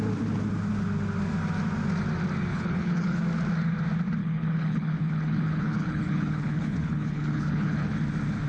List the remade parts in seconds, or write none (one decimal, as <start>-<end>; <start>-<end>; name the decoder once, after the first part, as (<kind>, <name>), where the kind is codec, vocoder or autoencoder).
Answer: 2.5-3.2 (codec, HILCodec); 4.2-8.0

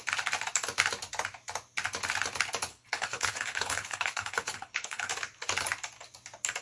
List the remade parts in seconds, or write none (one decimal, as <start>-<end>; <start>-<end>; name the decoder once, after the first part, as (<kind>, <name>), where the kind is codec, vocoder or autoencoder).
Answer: 2.7-5.1 (codec, HILCodec)

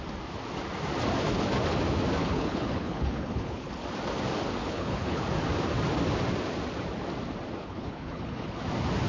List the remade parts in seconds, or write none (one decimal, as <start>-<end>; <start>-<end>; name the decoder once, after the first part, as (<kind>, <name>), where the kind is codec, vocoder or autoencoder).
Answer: 2.2-3.7 (codec, HILCodec); 4.6-5.2; 7.6-8.6

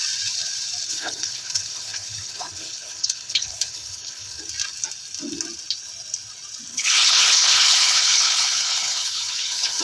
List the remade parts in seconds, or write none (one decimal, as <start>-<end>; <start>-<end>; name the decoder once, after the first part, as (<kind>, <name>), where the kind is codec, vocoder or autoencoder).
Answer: 0.9-4.4 (codec, HILCodec); 6.7-9.8